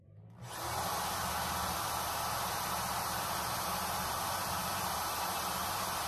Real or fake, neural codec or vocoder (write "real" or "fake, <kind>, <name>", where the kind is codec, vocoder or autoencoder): real